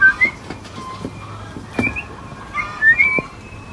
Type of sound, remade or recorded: recorded